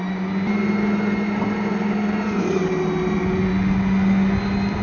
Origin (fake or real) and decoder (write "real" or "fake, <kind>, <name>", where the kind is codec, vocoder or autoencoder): real